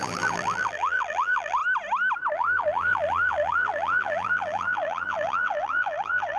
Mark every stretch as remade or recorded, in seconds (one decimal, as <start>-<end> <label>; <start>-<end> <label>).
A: 0.0-1.6 remade; 1.6-2.3 recorded; 2.3-6.4 remade